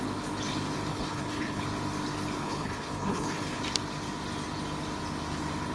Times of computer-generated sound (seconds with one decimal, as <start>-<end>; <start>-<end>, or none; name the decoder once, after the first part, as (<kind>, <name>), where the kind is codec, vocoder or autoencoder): 0.9-1.6 (codec, HILCodec); 2.4-3.6